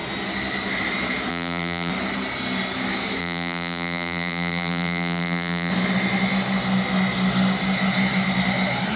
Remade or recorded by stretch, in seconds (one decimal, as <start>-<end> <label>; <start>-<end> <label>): 0.0-1.3 recorded; 1.3-1.9 remade; 1.9-3.2 recorded; 3.2-5.7 remade; 5.7-9.0 recorded